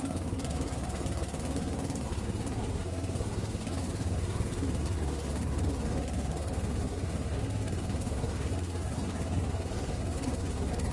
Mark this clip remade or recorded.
remade